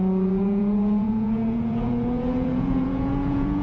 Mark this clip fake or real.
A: fake